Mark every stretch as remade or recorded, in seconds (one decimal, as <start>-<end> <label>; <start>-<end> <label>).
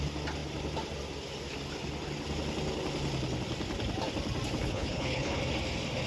0.0-4.6 recorded; 4.6-5.4 remade; 5.4-6.1 recorded